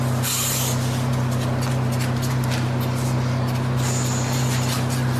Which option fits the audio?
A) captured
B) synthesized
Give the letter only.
A